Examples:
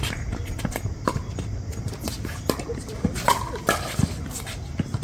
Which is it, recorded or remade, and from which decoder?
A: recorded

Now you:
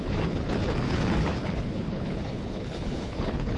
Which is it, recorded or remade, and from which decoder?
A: remade, codec, HILCodec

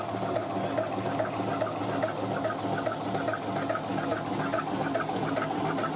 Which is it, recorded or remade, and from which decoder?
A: recorded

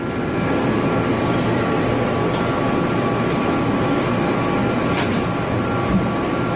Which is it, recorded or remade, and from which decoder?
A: recorded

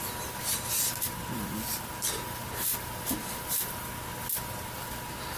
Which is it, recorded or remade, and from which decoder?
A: recorded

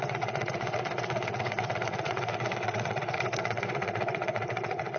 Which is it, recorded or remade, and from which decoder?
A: remade, vocoder, WaveNeXt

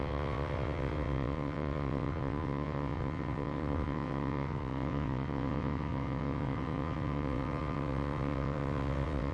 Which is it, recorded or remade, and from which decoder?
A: remade, vocoder, WaveNeXt